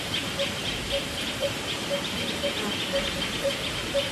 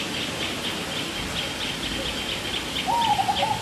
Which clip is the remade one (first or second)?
first